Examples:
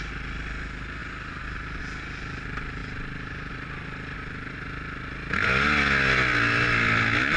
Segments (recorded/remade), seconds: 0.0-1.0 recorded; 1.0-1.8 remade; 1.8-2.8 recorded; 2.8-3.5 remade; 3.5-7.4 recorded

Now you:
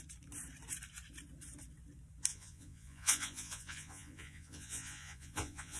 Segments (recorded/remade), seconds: 0.0-2.3 recorded; 2.3-5.8 remade